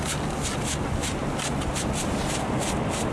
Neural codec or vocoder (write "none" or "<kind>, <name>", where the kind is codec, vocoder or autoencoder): none